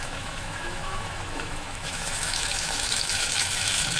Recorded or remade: remade